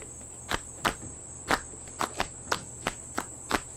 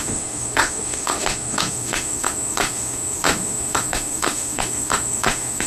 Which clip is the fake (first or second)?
second